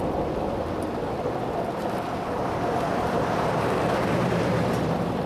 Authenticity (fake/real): fake